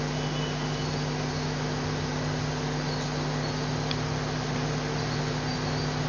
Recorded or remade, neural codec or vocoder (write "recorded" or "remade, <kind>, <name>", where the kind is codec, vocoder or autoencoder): recorded